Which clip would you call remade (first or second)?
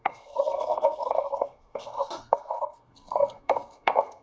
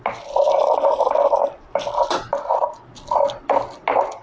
first